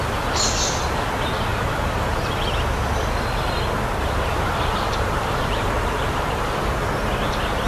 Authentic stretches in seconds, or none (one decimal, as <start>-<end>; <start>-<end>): 0.0-1.5; 2.3-4.3; 6.9-7.7